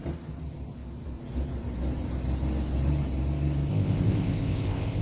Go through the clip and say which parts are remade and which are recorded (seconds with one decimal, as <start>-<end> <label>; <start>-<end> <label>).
0.0-3.7 recorded; 3.7-5.0 remade